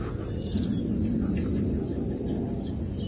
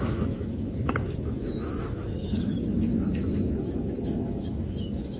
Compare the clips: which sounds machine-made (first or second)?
second